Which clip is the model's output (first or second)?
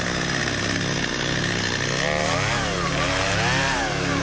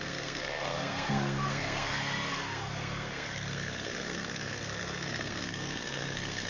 second